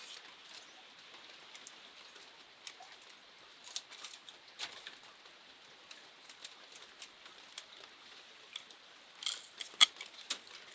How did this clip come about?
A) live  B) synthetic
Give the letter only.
A